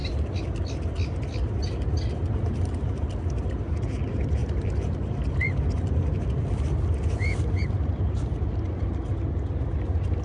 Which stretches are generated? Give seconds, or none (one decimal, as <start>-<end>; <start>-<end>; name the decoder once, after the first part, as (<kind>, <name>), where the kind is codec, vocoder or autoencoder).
none

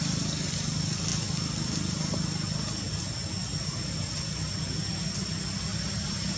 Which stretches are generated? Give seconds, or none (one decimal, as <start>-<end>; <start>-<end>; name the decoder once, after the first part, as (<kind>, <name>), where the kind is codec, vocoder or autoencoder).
5.7-6.4 (vocoder, BigVGAN v2)

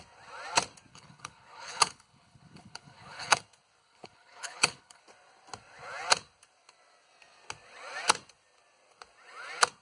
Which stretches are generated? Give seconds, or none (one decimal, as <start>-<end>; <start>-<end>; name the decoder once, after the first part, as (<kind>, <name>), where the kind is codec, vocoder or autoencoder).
0.9-3.4 (codec, HILCodec); 3.8-5.0

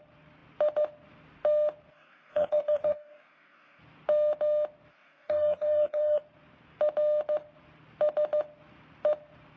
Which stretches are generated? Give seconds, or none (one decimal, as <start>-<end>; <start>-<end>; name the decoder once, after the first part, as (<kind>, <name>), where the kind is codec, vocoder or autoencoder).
1.9-3.8 (codec, DAC); 4.9-6.2

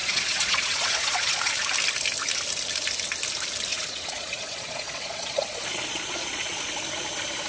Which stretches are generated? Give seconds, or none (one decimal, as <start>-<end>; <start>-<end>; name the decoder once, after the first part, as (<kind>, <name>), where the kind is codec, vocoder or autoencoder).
0.0-1.5 (vocoder, Vocos); 3.7-6.7

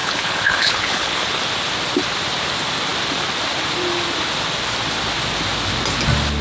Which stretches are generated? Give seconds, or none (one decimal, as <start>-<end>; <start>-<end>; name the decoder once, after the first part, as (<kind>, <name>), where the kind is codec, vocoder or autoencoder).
0.0-1.4 (codec, HILCodec)

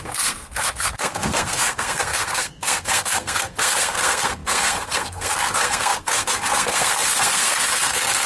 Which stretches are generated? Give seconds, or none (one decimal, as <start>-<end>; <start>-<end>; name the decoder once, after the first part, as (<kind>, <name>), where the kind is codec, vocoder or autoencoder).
0.0-8.3 (codec, SNAC)